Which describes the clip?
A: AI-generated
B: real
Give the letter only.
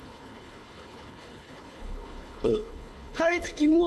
A